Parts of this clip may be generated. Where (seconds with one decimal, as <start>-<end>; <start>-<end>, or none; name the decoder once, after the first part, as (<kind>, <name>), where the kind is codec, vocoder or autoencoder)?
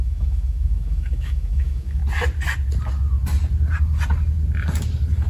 0.0-2.0 (autoencoder, DAC-VAE)